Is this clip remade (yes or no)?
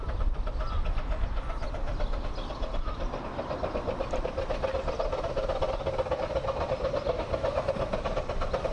no